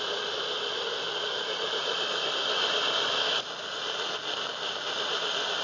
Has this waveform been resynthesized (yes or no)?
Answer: no